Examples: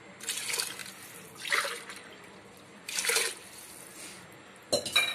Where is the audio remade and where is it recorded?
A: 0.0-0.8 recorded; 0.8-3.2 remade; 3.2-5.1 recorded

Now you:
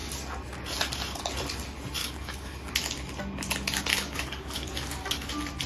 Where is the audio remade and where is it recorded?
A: 0.0-2.0 recorded; 2.0-2.7 remade; 2.7-3.9 recorded; 3.9-5.3 remade; 5.3-5.7 recorded